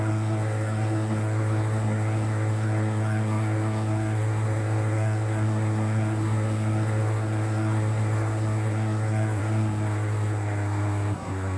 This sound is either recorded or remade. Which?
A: remade